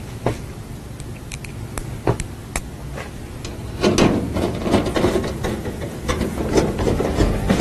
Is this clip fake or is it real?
real